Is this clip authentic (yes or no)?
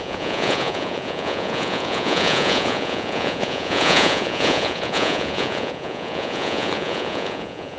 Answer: no